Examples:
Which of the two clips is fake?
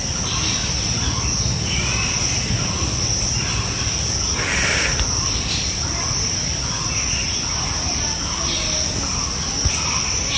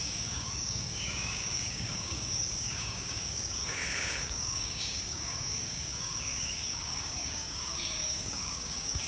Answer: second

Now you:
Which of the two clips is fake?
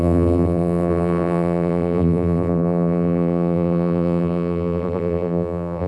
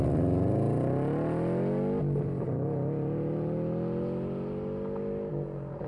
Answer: first